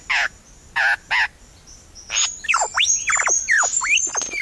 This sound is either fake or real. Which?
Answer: real